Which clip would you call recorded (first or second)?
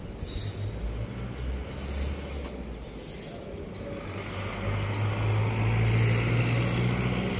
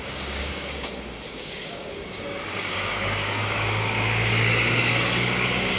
first